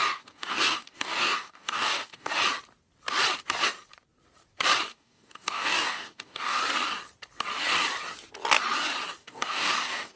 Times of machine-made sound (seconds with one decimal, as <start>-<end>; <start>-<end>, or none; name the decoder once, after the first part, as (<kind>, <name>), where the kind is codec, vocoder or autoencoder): 0.0-2.3 (codec, DAC); 4.9-6.6; 9.2-10.2